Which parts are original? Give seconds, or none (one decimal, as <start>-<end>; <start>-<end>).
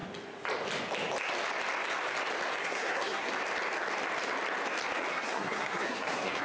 0.0-2.6; 3.3-5.1